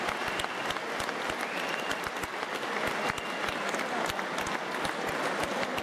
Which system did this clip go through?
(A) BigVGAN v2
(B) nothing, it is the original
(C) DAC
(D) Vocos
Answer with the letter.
B